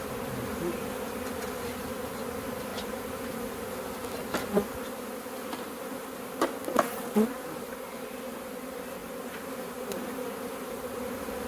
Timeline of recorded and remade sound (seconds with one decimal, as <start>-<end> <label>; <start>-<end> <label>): 0.0-11.5 recorded